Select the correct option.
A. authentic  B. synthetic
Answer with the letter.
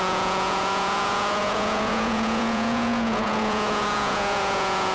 B